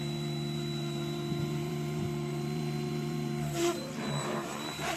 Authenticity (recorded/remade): remade